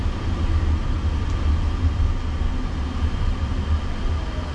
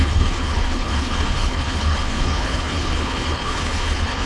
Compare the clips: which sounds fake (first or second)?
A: second